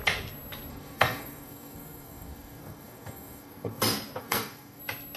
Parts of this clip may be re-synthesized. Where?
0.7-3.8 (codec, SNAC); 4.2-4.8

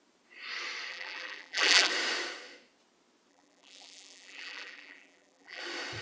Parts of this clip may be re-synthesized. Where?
0.9-1.9 (vocoder, BigVGAN v2); 3.3-5.6

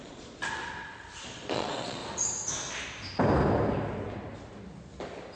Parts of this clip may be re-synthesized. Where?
0.0-0.4 (vocoder, Vocos); 1.2-2.0

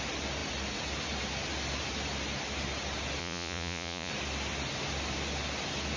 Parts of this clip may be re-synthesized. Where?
3.2-4.1 (vocoder, Vocos)

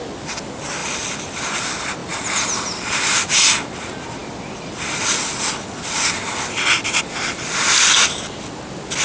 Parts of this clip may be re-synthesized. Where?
0.8-1.4 (vocoder, BigVGAN v2); 2.0-3.0

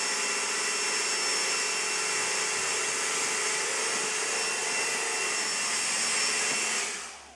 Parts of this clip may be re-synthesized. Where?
none